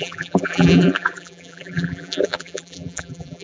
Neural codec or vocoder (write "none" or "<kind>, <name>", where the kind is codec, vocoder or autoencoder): vocoder, BigVGAN v2